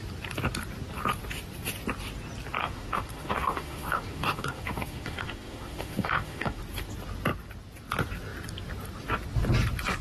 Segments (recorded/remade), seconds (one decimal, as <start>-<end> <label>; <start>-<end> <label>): 0.0-2.6 recorded; 2.6-6.6 remade; 6.6-10.0 recorded